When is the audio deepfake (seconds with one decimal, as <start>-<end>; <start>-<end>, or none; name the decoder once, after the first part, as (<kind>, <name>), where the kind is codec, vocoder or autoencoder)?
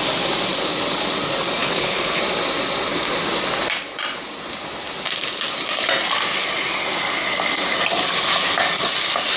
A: 1.6-2.2 (codec, HILCodec)